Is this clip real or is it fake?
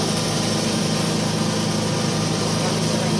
real